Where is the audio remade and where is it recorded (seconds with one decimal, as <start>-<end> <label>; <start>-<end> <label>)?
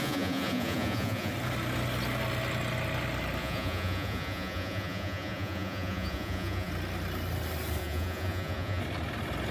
0.0-1.3 remade; 1.3-3.4 recorded; 3.4-6.7 remade; 6.7-7.8 recorded; 7.8-8.8 remade; 8.8-9.5 recorded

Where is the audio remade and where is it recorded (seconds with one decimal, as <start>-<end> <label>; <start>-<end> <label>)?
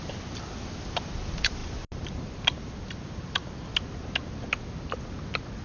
0.0-5.6 recorded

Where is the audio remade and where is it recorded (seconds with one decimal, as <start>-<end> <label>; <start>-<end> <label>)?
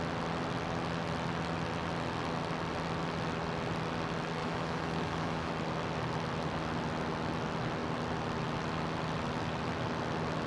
0.0-4.4 recorded; 4.4-5.5 remade; 5.5-10.5 recorded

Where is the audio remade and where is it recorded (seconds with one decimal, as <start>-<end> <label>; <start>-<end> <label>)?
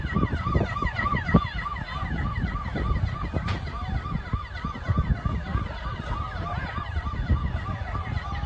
0.0-8.5 recorded